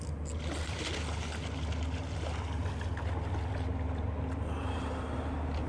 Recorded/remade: recorded